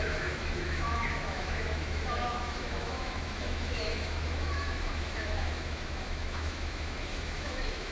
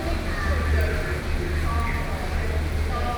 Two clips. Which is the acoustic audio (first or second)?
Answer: second